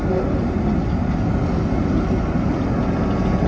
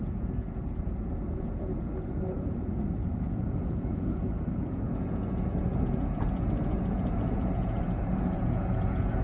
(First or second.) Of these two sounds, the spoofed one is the second